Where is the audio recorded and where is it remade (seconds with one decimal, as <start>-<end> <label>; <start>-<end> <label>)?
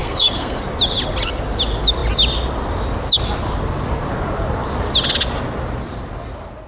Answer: 0.0-0.6 remade; 0.6-6.7 recorded